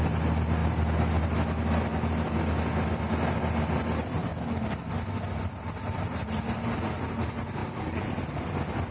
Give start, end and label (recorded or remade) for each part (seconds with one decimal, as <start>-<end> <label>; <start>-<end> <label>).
0.0-8.9 recorded